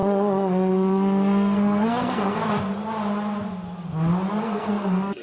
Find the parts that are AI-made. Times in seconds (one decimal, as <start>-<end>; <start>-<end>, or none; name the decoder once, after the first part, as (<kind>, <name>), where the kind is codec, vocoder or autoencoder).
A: 0.0-2.4 (codec, SNAC); 4.4-5.2